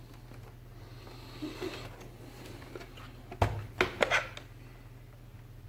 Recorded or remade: recorded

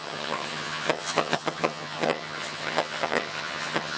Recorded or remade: remade